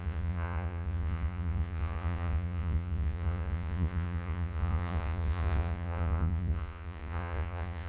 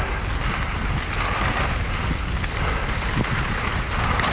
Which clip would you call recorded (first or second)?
second